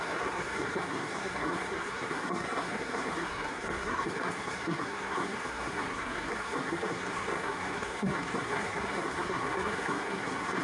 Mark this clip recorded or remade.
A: remade